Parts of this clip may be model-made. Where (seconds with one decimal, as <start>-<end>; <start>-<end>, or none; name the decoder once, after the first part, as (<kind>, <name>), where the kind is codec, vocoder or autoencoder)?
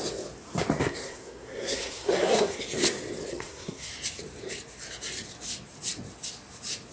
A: 0.8-2.6 (codec, SNAC); 3.3-3.9